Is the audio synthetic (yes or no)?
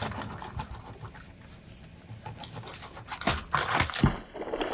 no